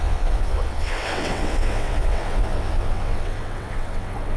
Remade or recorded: remade